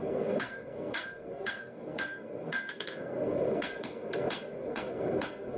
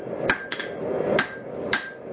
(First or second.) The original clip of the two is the second